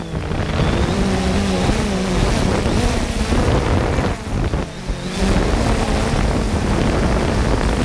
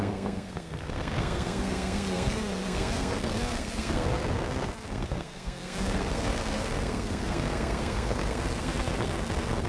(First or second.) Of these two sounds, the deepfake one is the second